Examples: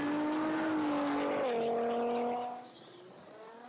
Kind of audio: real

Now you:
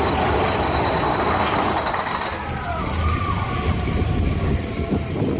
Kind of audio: real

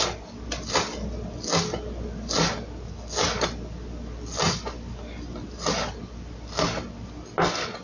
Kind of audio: real